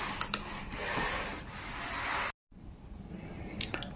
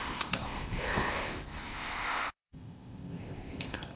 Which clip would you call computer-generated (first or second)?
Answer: second